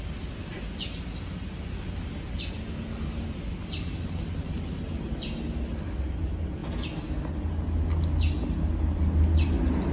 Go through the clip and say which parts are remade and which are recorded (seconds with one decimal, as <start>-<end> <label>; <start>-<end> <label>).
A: 0.0-9.9 recorded